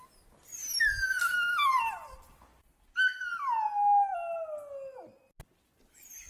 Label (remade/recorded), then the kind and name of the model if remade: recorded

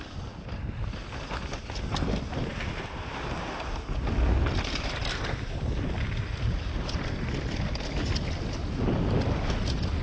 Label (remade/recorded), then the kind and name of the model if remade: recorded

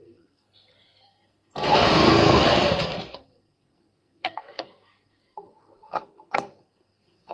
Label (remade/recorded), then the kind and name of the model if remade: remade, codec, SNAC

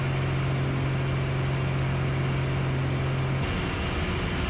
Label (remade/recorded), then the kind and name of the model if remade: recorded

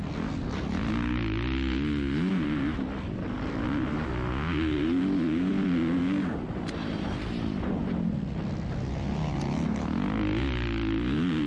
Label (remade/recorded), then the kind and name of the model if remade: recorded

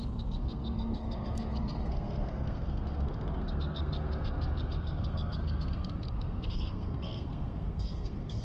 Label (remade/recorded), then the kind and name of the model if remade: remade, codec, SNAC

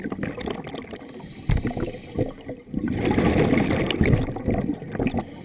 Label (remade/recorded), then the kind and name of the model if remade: recorded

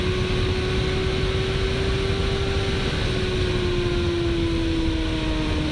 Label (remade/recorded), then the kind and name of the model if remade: recorded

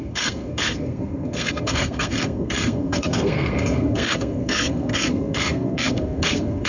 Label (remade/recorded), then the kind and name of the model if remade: remade, codec, SNAC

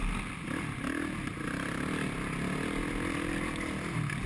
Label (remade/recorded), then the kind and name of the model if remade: recorded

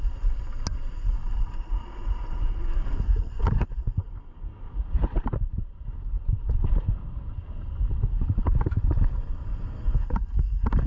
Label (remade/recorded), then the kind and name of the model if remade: recorded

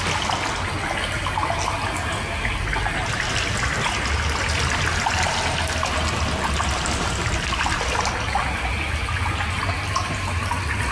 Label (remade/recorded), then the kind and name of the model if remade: recorded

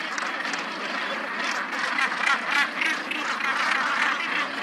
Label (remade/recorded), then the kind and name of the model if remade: recorded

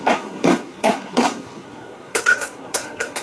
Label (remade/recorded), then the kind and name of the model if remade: remade, codec, SNAC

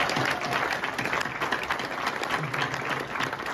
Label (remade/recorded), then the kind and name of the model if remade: recorded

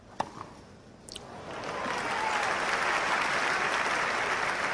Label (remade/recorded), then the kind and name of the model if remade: recorded